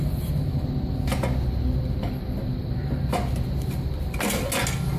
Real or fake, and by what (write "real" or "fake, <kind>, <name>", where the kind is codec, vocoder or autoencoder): real